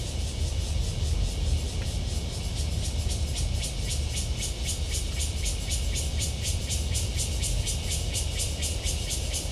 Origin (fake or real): real